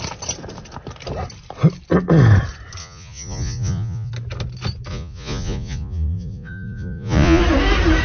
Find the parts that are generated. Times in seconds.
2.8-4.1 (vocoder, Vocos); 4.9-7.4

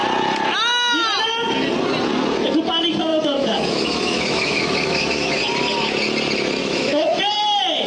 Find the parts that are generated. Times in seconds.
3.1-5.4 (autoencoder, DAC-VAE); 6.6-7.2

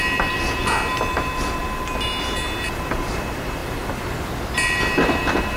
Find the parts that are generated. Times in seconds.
0.0-0.6 (vocoder, BigVGAN v2); 1.1-1.6; 2.2-3.6; 4.3-5.6